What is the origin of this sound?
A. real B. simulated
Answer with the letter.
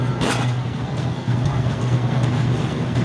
B